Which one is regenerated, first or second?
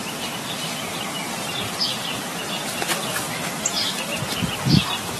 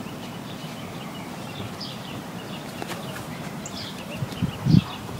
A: second